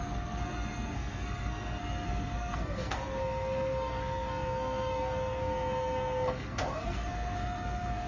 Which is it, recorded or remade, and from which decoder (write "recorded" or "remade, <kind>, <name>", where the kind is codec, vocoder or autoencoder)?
remade, codec, SNAC